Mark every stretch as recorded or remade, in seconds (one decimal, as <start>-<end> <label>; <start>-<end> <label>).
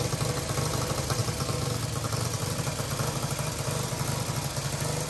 0.0-5.1 recorded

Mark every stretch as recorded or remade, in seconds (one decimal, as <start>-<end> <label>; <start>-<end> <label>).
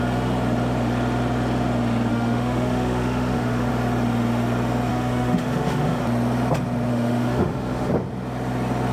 0.0-2.1 recorded; 2.1-3.7 remade; 3.7-4.9 recorded; 4.9-6.0 remade; 6.0-6.9 recorded; 6.9-7.9 remade; 7.9-8.9 recorded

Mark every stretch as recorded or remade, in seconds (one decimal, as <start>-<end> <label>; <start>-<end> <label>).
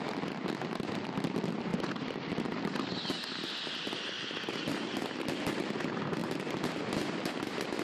0.0-7.8 recorded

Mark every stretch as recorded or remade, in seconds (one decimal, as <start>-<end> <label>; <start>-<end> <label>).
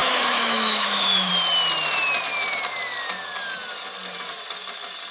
0.0-1.3 remade; 1.3-5.1 recorded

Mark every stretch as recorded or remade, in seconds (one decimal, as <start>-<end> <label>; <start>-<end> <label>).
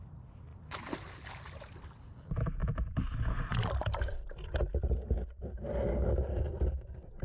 0.0-2.6 recorded; 2.6-4.4 remade; 4.4-7.2 recorded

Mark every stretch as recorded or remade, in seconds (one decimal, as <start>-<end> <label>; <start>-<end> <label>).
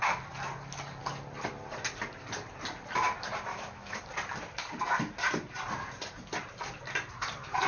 0.0-3.5 recorded; 3.5-4.0 remade; 4.0-7.7 recorded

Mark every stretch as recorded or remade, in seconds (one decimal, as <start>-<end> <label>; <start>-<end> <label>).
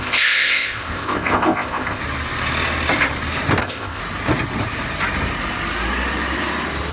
0.0-2.0 remade; 2.0-3.6 recorded; 3.6-4.0 remade; 4.0-6.9 recorded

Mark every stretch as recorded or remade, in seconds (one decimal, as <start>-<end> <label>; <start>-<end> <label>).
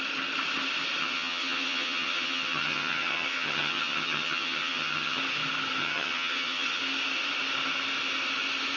0.0-1.0 recorded; 1.0-5.2 remade; 5.2-5.8 recorded; 5.8-6.8 remade; 6.8-8.8 recorded